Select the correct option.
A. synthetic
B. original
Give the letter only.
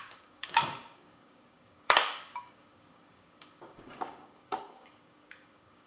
A